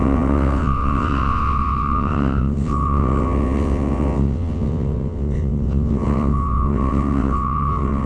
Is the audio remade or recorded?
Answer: remade